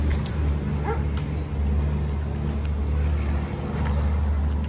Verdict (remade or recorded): recorded